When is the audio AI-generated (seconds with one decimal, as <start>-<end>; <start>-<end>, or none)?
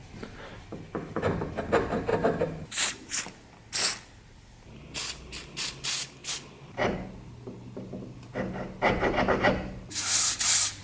0.0-0.5; 2.1-3.2